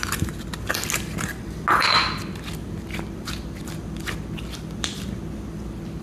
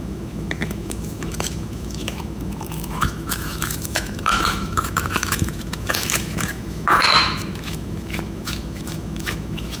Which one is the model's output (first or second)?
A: second